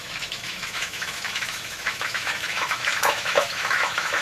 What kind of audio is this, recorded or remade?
remade